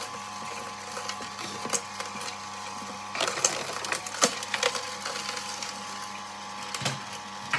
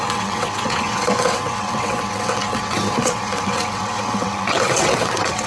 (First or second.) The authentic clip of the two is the first